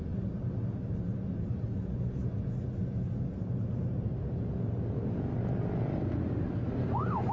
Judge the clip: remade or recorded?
recorded